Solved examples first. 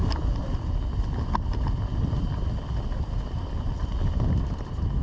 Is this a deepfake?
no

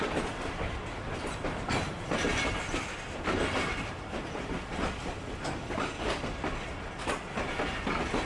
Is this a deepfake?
yes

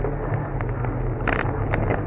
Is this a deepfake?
no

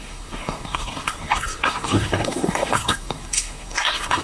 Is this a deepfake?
yes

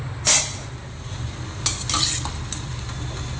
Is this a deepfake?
no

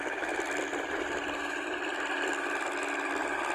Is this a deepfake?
no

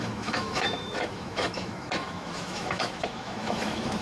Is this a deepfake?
yes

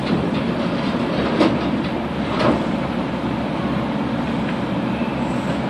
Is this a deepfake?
no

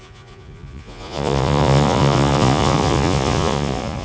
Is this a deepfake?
yes